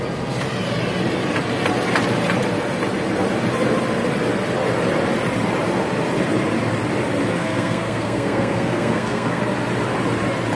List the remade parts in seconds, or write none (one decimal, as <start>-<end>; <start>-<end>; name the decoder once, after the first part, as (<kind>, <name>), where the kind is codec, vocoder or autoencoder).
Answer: 7.3-9.4 (codec, SNAC)